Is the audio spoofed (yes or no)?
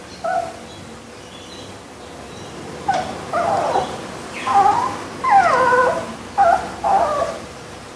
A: no